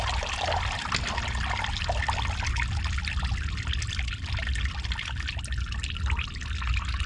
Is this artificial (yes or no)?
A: no